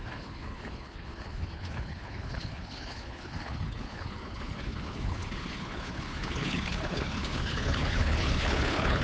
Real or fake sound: fake